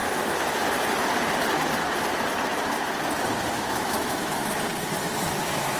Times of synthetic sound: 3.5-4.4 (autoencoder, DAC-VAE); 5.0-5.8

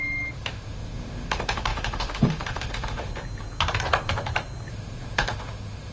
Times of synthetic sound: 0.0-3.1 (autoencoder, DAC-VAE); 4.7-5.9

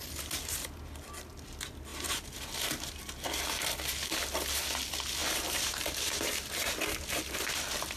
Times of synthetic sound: 5.2-6.3 (vocoder, BigVGAN v2)

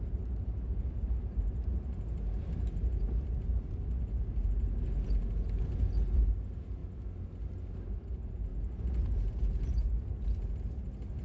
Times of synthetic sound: none

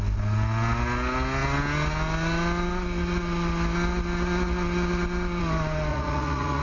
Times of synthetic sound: 5.9-6.6 (vocoder, Vocos)

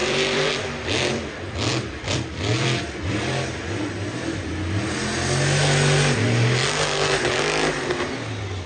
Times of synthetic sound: 0.0-0.5 (vocoder, BigVGAN v2); 1.7-3.6

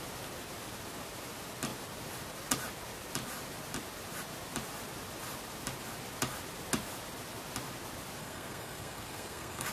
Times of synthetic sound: 8.2-9.7 (codec, SNAC)

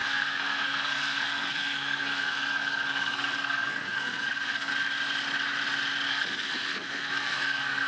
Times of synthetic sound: 0.0-4.7 (codec, SNAC); 6.1-7.9